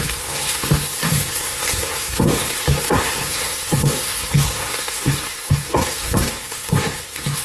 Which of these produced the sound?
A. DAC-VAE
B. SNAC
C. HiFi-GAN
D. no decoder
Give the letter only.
B